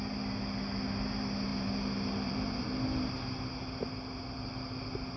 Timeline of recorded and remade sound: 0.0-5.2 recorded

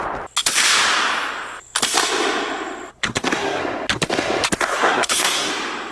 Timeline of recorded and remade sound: 0.0-2.9 recorded; 2.9-3.6 remade; 3.6-4.7 recorded; 4.7-5.5 remade; 5.5-5.9 recorded

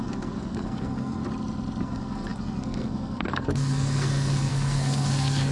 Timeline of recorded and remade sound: 0.0-1.2 remade; 1.2-1.8 recorded; 1.8-5.5 remade

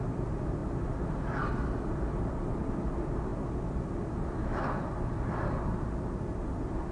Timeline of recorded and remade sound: 0.0-6.9 recorded

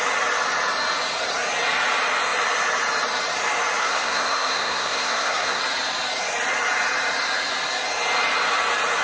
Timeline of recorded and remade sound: 0.0-3.8 recorded; 3.8-5.6 remade; 5.6-9.0 recorded

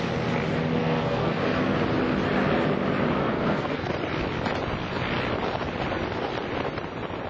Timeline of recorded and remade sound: 0.0-0.8 recorded; 0.8-1.4 remade; 1.4-3.2 recorded; 3.2-3.9 remade; 3.9-7.3 recorded

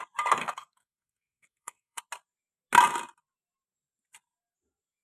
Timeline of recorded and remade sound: 0.0-0.4 recorded; 0.4-2.0 remade; 2.0-5.0 recorded

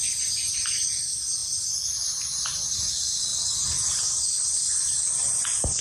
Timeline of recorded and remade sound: 0.0-5.8 recorded